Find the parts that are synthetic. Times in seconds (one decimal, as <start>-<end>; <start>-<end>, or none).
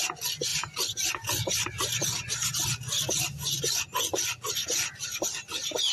none